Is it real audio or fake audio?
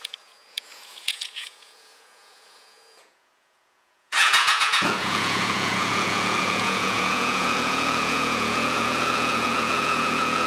fake